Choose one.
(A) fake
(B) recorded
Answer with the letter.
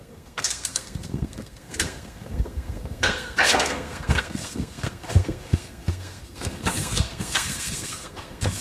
A